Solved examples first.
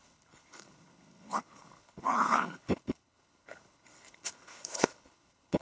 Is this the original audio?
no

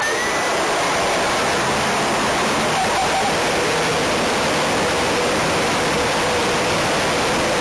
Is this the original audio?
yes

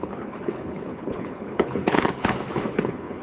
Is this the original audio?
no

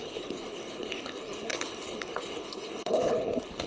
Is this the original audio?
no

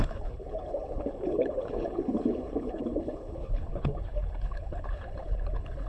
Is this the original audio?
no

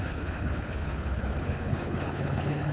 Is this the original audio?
no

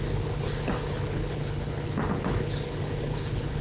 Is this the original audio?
no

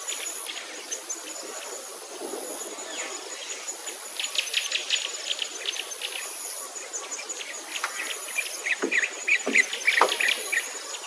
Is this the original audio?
yes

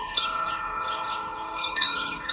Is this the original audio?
no